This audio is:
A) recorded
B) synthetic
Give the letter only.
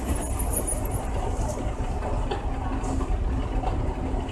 A